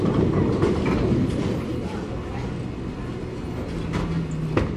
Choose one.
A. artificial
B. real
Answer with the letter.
B